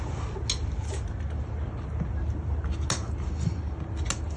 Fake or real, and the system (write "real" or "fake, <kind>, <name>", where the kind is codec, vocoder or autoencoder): real